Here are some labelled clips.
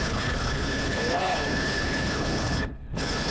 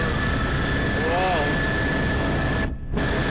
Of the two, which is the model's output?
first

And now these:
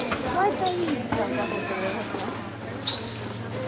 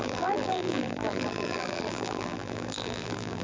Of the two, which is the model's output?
second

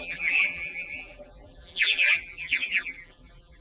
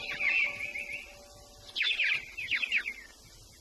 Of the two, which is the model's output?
first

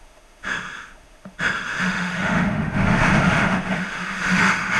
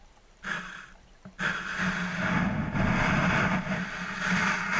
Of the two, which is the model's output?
first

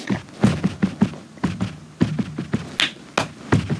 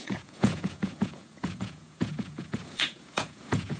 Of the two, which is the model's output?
second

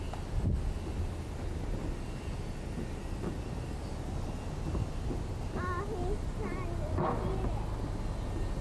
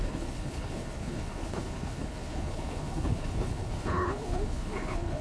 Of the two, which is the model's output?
second